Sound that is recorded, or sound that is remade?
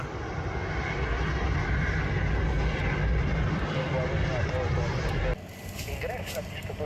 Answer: recorded